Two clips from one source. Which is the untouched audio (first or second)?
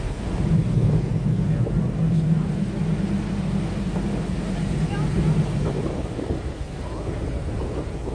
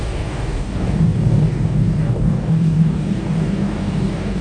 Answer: first